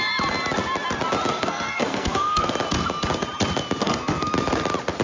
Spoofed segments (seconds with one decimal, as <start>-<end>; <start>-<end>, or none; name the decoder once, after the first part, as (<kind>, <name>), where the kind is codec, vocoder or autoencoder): 1.3-2.5 (codec, SNAC); 3.8-4.3